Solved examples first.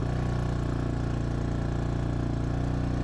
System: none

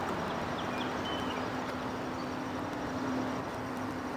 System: none